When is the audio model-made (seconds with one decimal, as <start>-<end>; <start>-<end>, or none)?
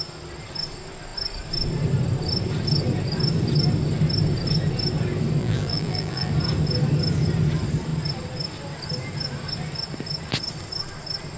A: 5.4-6.3